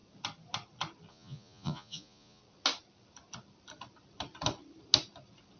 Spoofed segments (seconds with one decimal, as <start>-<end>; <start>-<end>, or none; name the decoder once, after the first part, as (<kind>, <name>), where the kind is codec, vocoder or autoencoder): 1.1-2.4 (vocoder, Vocos)